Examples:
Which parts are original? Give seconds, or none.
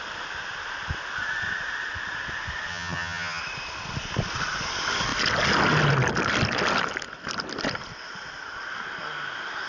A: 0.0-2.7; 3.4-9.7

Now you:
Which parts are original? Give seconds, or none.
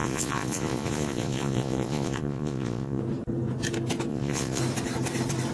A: 3.0-4.1; 4.6-5.5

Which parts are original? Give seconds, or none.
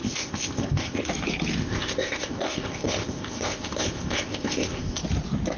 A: 1.1-1.6; 5.0-5.6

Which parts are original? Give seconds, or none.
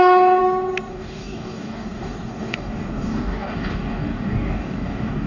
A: 0.4-0.9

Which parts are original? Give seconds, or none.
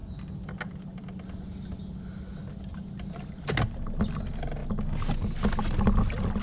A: 0.0-6.4